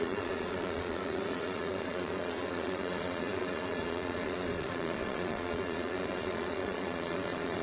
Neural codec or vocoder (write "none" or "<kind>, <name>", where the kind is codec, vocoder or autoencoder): vocoder, Vocos